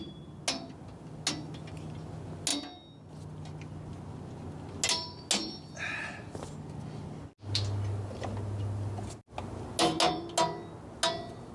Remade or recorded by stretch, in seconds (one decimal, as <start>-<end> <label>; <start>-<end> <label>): 0.0-11.5 recorded